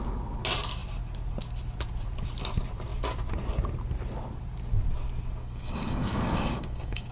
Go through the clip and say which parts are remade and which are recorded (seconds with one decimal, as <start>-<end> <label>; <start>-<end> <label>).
0.0-5.4 recorded; 5.4-7.1 remade